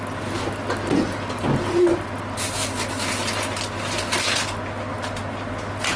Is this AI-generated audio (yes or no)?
no